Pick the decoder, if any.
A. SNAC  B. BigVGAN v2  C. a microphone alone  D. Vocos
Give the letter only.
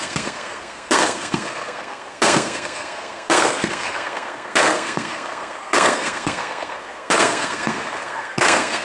A